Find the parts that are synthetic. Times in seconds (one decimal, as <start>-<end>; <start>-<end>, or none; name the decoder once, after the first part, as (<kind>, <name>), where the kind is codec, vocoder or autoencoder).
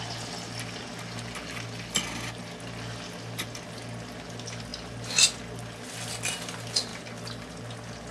none